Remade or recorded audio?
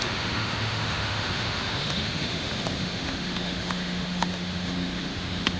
remade